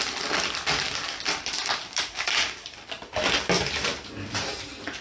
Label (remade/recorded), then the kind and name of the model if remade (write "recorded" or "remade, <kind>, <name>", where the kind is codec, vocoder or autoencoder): recorded